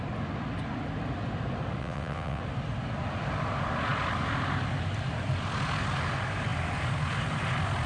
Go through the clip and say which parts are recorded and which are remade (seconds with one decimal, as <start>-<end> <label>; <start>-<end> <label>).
0.0-1.8 recorded; 1.8-2.4 remade; 2.4-7.9 recorded